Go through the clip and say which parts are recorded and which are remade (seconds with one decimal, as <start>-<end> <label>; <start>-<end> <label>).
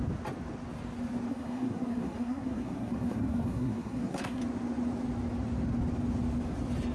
0.0-1.3 recorded; 1.3-4.4 remade; 4.4-6.9 recorded